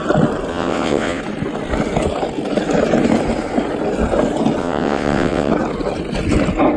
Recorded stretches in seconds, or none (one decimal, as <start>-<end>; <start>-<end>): 0.0-0.5; 1.2-4.6; 5.5-6.8